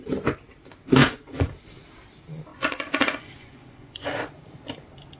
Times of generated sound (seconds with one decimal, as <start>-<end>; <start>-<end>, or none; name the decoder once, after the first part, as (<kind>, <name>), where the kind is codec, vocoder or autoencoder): 1.0-1.5 (vocoder, Vocos); 2.5-4.2